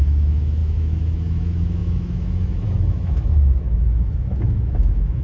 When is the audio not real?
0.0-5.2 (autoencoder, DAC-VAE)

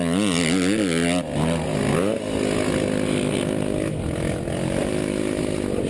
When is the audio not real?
none